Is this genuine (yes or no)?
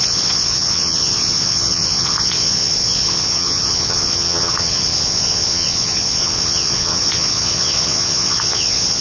no